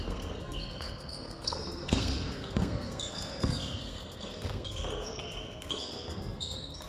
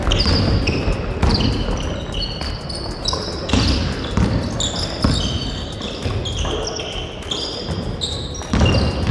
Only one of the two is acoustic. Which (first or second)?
second